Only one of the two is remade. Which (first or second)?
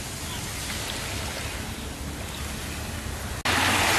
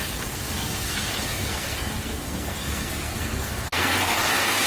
second